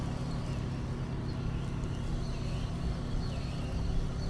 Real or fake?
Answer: real